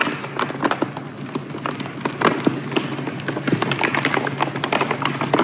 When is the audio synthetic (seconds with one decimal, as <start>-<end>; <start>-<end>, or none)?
none